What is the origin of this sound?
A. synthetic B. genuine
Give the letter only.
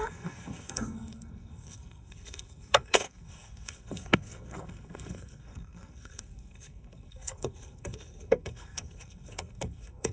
A